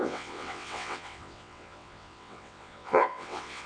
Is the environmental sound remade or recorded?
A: remade